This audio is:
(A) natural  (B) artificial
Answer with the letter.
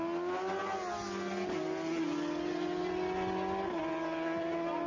A